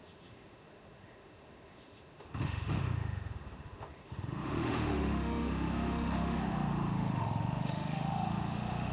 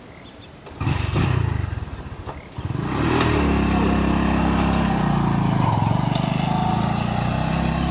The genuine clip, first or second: second